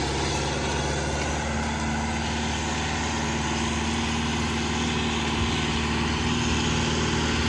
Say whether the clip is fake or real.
real